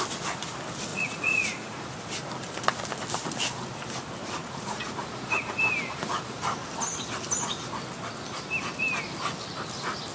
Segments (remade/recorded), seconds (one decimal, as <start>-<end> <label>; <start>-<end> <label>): 0.0-0.9 recorded; 0.9-1.9 remade; 1.9-4.4 recorded; 4.4-5.6 remade; 5.6-10.1 recorded